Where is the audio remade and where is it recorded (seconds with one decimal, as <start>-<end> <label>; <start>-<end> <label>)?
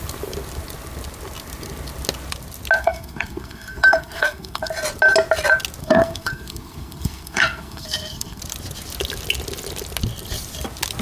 0.0-2.8 recorded; 2.8-4.7 remade; 4.7-5.8 recorded; 5.8-8.4 remade; 8.4-11.0 recorded